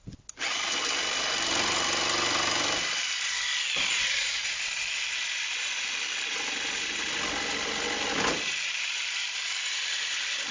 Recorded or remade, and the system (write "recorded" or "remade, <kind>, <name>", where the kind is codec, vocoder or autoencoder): recorded